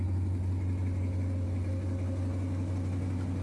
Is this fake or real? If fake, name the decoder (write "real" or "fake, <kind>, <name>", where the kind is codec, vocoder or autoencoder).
real